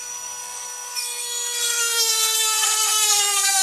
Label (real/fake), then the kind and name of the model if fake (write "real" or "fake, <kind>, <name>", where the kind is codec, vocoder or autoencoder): fake, codec, SNAC